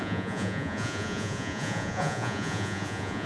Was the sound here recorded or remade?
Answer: remade